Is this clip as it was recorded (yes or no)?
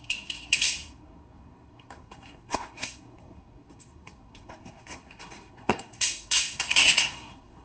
no